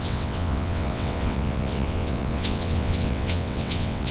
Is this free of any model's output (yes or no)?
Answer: no